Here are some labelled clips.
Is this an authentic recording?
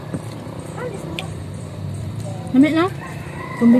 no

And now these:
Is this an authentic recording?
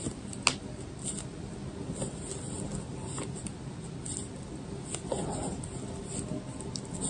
yes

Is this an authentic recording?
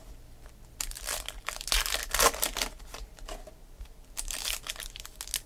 yes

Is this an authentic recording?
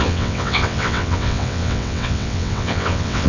no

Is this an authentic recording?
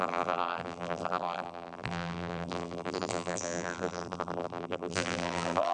no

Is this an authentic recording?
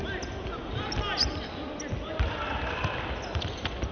yes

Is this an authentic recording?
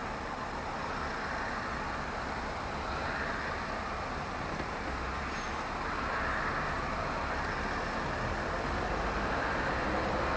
yes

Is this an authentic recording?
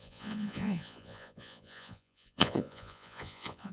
no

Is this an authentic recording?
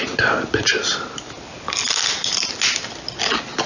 yes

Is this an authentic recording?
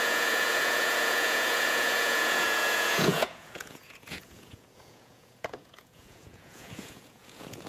no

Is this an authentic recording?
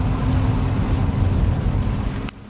yes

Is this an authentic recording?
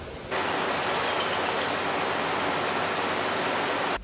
yes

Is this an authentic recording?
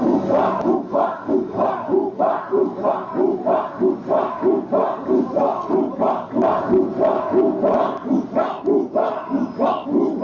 yes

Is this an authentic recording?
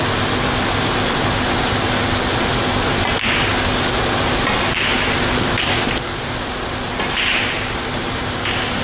yes